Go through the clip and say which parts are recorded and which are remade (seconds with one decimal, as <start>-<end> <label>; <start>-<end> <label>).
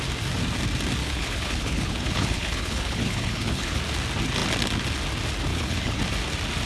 0.0-1.0 recorded; 1.0-3.8 remade; 3.8-5.5 recorded; 5.5-6.0 remade; 6.0-6.7 recorded